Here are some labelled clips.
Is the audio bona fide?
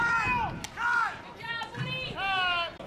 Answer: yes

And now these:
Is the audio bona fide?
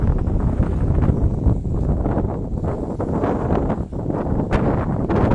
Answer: yes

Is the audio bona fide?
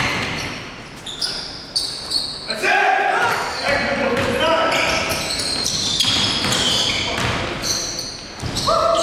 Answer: yes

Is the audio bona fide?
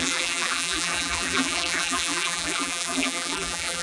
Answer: no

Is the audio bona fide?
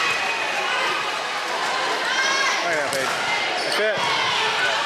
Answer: yes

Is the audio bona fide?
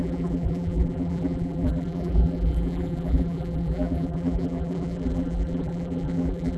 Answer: no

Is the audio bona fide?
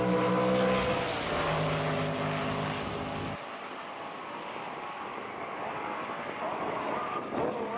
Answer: yes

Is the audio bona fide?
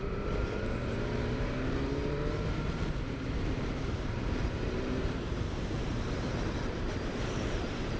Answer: no